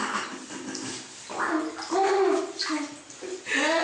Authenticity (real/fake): real